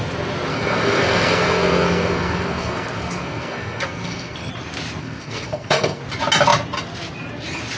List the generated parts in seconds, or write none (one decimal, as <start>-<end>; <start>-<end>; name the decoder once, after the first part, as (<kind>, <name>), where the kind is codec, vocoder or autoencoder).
0.5-4.5 (codec, SNAC); 5.0-6.0